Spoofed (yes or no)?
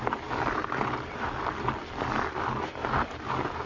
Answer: no